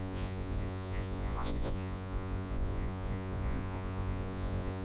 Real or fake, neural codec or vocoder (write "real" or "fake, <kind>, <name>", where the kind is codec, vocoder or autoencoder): fake, vocoder, Vocos